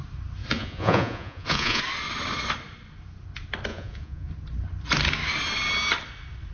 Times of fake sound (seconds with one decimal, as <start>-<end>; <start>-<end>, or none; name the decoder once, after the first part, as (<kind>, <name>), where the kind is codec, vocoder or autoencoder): 0.4-1.8 (vocoder, Vocos); 3.7-4.3